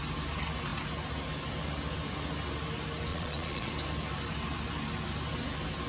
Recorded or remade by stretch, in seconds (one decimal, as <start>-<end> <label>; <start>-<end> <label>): 0.0-3.1 recorded; 3.1-3.7 remade; 3.7-5.9 recorded